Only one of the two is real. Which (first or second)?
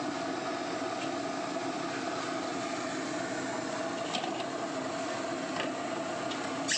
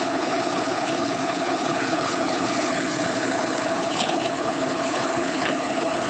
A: first